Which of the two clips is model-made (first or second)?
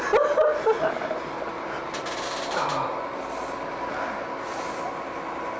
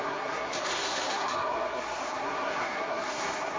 second